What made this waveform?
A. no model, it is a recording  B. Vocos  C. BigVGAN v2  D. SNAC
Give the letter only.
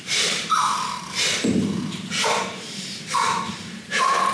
C